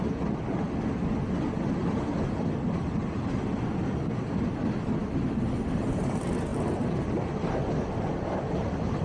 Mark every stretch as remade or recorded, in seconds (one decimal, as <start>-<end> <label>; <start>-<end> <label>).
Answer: 0.0-1.8 recorded; 1.8-2.4 remade; 2.4-6.5 recorded; 6.5-7.7 remade; 7.7-9.0 recorded